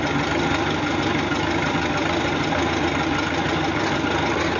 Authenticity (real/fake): real